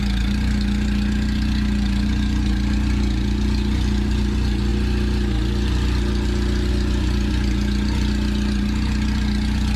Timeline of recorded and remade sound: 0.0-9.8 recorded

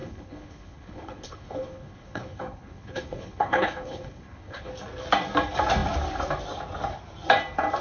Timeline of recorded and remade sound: 0.0-4.7 remade; 4.7-7.8 recorded

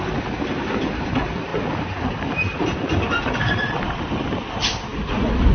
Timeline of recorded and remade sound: 0.0-5.5 recorded

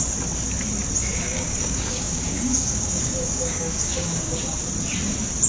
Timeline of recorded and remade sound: 0.0-1.1 recorded; 1.1-4.4 remade; 4.4-5.5 recorded